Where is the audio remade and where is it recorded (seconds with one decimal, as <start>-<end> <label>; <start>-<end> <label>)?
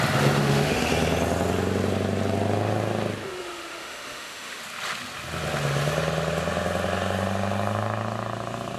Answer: 0.0-0.4 recorded; 0.4-0.9 remade; 0.9-3.2 recorded; 3.2-4.6 remade; 4.6-8.8 recorded